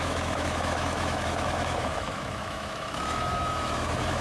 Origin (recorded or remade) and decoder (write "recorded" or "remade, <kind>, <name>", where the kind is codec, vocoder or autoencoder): remade, autoencoder, DAC-VAE